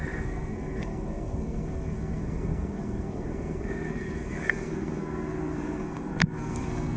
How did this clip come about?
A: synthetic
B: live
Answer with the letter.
A